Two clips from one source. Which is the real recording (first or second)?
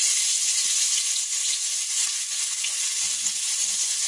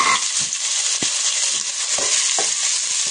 second